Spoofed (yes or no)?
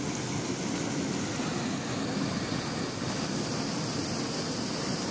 no